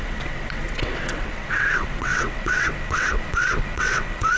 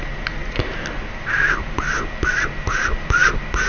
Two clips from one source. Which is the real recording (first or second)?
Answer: second